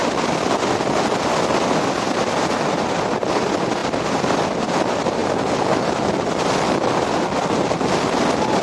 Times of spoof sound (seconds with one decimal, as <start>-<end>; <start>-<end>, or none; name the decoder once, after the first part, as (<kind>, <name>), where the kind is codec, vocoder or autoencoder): none